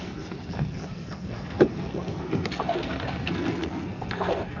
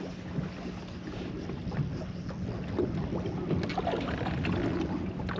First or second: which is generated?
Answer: first